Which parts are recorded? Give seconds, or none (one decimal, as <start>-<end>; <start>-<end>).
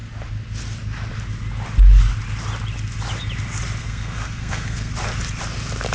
0.0-3.8; 4.9-5.9